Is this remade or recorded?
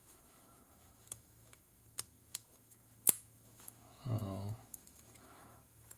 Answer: remade